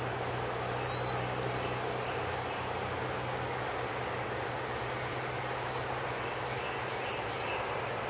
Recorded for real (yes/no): yes